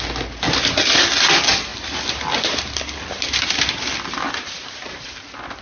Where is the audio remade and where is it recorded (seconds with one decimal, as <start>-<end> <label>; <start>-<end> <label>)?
0.0-5.6 recorded